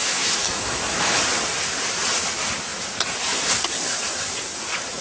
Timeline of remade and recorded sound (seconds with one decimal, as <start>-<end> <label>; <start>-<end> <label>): 0.0-1.2 remade; 1.2-5.0 recorded

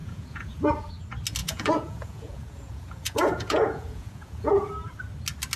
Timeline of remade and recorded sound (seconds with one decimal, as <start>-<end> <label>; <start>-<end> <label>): 0.0-0.9 remade; 0.9-1.4 recorded; 1.4-4.7 remade; 4.7-5.6 recorded

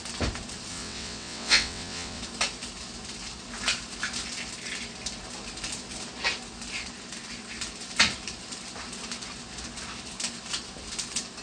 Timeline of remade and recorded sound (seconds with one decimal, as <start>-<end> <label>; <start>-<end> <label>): 0.0-0.7 recorded; 0.7-2.2 remade; 2.2-11.4 recorded